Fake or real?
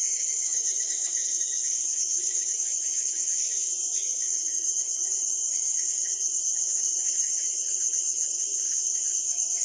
fake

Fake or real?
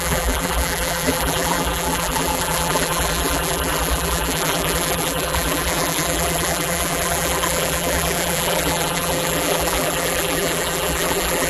fake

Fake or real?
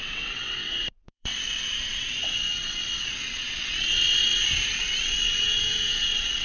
fake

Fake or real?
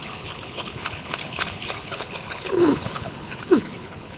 fake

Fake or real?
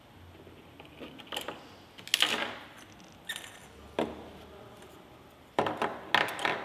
real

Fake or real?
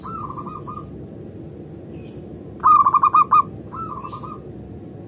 real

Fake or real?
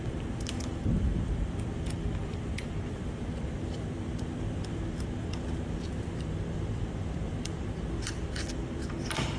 fake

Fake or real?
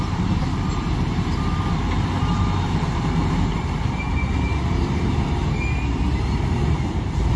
fake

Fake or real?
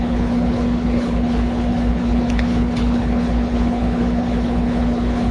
fake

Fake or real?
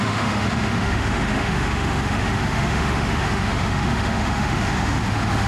fake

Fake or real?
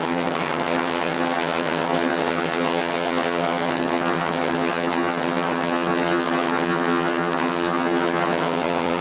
fake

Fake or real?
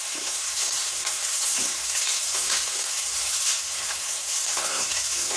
fake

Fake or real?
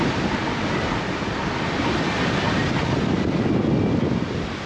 real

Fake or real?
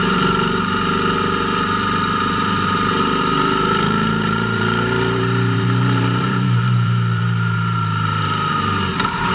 fake